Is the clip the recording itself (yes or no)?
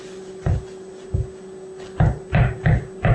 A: yes